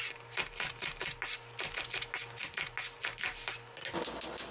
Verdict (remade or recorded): recorded